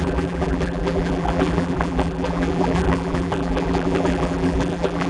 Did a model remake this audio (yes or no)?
yes